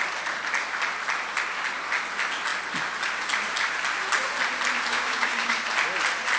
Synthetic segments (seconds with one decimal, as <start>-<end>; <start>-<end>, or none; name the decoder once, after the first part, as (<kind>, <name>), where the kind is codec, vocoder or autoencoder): 4.9-5.5 (codec, DAC)